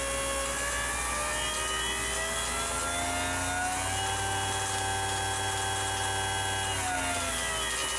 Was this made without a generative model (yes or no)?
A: yes